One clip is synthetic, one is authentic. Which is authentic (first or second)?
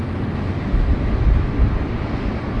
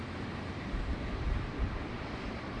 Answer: first